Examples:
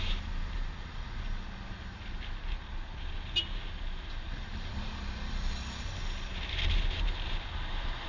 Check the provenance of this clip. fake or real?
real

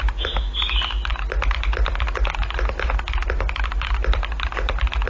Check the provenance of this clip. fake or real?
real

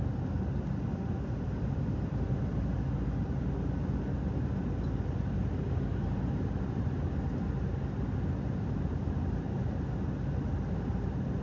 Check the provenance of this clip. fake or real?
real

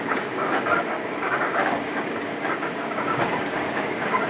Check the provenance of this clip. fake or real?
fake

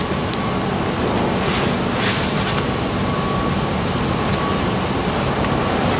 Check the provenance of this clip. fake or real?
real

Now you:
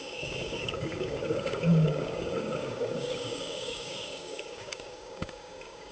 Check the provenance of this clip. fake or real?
fake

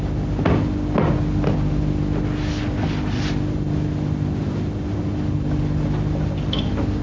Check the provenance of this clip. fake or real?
real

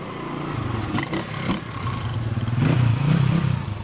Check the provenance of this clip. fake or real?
real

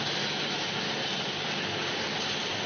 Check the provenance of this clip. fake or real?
real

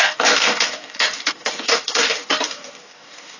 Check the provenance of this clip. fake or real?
fake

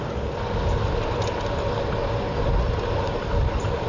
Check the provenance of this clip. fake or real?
real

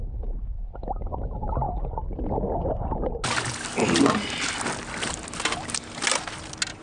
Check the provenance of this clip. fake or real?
real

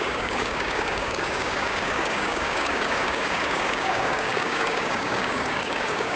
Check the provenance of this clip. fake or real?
fake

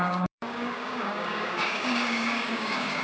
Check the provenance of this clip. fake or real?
fake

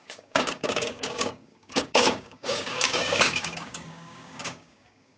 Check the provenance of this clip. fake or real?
fake